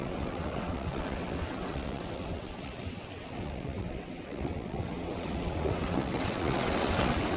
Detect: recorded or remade remade